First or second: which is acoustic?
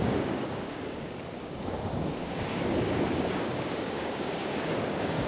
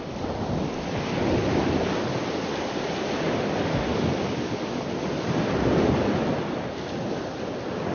second